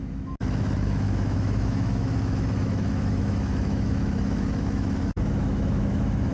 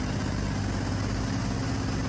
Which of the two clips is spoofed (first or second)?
first